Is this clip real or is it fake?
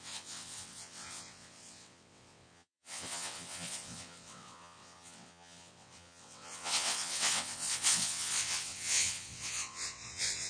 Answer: fake